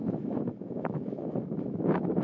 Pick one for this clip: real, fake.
fake